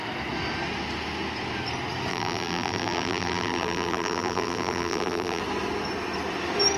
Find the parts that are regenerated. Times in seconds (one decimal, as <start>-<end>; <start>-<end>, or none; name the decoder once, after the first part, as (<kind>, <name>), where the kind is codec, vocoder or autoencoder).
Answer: 2.1-5.4 (vocoder, BigVGAN v2)